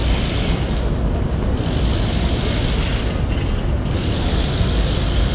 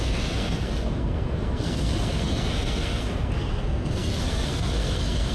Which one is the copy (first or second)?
second